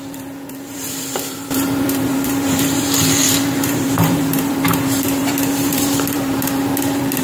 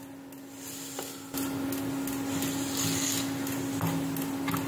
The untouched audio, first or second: second